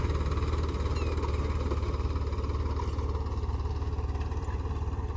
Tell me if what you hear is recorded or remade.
recorded